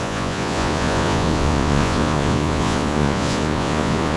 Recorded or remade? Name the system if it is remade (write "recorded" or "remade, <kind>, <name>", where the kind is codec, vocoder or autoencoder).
remade, vocoder, Vocos